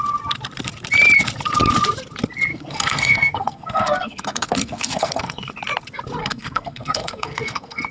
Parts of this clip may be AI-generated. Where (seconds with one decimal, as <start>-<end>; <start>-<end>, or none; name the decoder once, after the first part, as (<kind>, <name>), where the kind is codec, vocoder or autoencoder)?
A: 2.5-5.5 (codec, SNAC); 6.2-7.9